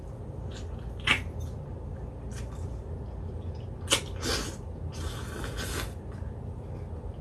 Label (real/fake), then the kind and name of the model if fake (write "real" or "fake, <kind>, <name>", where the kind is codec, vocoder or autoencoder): real